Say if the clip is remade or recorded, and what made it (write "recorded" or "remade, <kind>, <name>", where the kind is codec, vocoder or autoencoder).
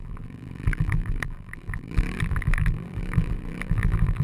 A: remade, vocoder, BigVGAN v2